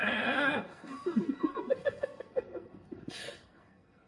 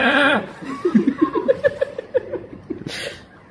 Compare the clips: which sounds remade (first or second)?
first